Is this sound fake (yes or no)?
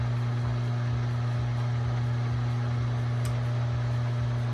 no